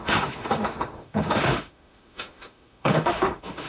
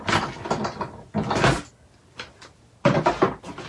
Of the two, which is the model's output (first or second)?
first